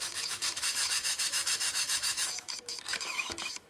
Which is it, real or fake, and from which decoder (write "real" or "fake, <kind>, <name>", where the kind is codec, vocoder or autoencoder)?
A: fake, autoencoder, DAC-VAE